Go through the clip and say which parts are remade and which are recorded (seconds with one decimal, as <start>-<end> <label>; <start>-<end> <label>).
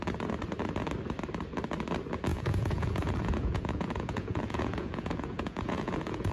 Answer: 0.0-2.3 recorded; 2.3-6.3 remade